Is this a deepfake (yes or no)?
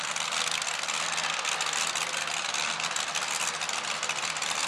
no